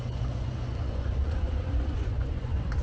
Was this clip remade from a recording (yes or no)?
yes